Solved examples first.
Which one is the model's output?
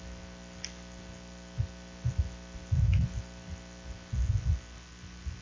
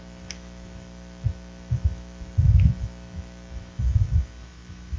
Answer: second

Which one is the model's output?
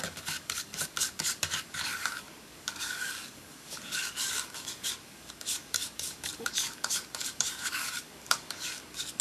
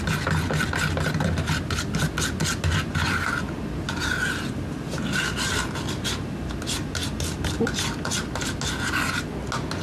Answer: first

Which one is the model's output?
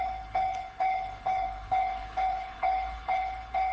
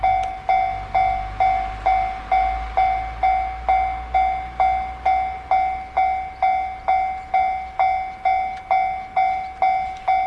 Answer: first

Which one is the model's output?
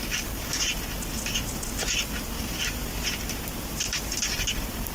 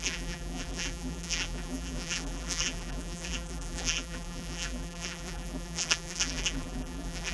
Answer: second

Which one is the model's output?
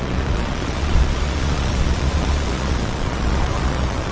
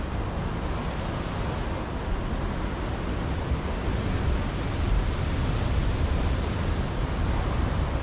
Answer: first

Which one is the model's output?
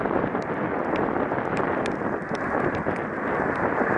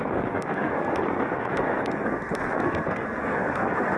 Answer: second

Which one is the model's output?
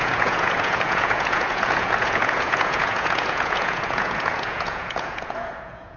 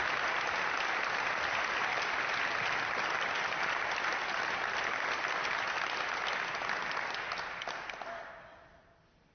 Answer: first